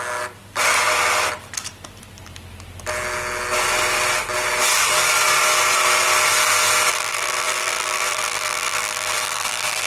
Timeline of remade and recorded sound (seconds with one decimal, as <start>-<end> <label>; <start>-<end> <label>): 0.0-6.9 recorded; 6.9-9.9 remade